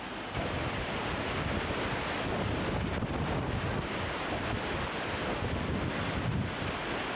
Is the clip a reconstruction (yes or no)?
no